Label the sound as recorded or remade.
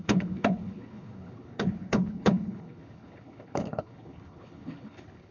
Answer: remade